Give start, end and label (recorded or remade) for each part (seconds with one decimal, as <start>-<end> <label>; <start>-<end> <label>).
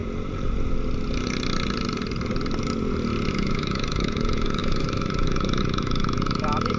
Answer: 0.0-3.3 recorded; 3.3-6.8 remade